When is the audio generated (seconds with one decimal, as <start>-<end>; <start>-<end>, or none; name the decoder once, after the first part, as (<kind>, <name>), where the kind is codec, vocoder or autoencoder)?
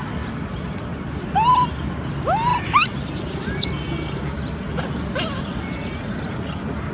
none